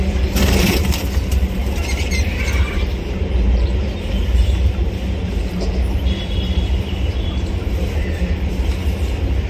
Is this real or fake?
fake